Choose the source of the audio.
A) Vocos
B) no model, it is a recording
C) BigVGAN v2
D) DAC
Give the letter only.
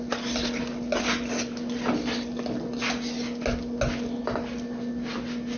B